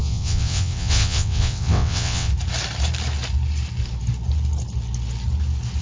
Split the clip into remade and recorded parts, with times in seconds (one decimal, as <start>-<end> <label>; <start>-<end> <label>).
0.0-2.3 remade; 2.3-5.8 recorded

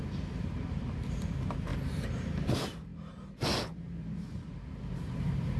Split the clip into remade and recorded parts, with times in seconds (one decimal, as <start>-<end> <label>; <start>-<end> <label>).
0.0-2.9 remade; 2.9-3.7 recorded; 3.7-5.6 remade

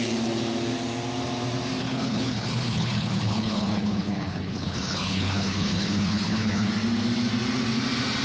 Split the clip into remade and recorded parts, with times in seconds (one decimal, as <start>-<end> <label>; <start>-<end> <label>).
0.0-1.8 recorded; 1.8-6.7 remade; 6.7-8.2 recorded

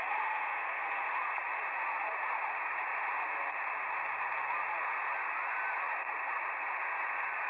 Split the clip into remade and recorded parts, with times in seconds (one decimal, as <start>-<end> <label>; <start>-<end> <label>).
0.0-1.4 remade; 1.4-2.0 recorded; 2.0-2.9 remade; 2.9-7.5 recorded

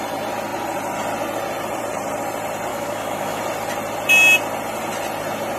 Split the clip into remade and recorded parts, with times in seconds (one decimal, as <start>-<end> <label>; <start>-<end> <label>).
0.0-2.7 recorded; 2.7-3.4 remade; 3.4-5.6 recorded

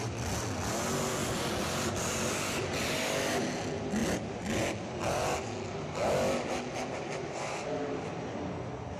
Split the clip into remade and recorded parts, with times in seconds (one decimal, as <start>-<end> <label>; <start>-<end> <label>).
0.0-9.0 recorded

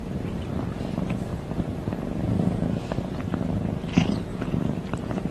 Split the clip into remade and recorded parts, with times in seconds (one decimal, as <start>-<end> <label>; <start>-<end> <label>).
0.0-0.5 remade; 0.5-1.3 recorded; 1.3-3.2 remade; 3.2-4.3 recorded; 4.3-5.3 remade